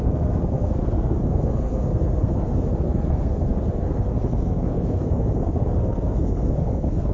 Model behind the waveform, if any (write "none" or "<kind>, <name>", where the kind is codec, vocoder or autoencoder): codec, SNAC